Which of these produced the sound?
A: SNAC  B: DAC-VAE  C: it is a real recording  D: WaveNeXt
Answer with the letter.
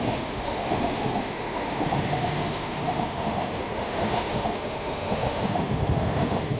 B